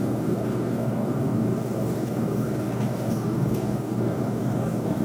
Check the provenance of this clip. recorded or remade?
remade